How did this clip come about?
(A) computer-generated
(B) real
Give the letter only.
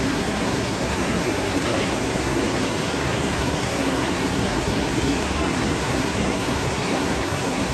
A